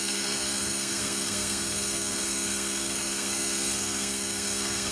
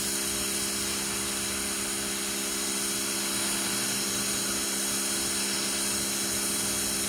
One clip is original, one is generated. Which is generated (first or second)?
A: first